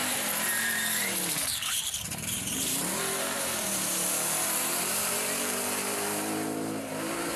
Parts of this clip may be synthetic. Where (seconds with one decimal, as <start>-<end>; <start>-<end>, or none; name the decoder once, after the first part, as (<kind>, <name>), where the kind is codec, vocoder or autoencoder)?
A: 0.0-7.4 (vocoder, BigVGAN v2)